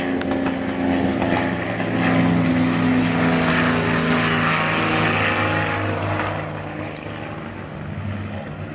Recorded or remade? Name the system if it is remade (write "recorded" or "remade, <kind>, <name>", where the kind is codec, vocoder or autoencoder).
recorded